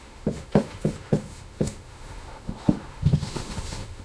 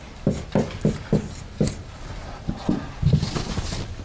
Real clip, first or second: second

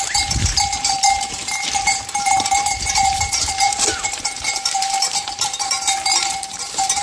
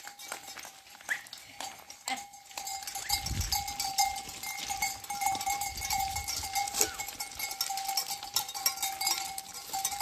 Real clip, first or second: second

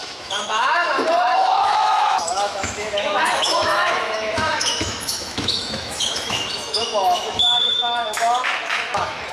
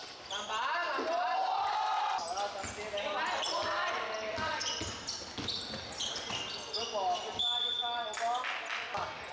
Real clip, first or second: second